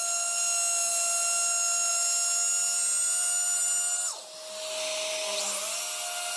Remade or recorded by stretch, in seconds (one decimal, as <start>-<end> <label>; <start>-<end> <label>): 0.0-6.4 recorded